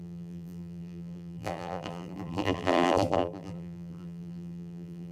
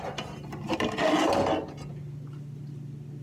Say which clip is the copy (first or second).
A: first